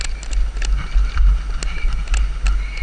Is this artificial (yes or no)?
no